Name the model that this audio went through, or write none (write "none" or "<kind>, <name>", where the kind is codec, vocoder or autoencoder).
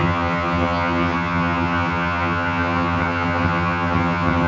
vocoder, HiFi-GAN